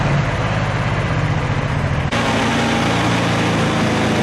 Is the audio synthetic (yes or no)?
no